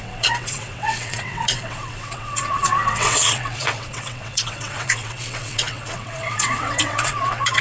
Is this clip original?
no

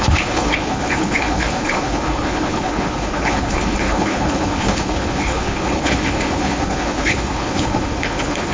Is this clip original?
no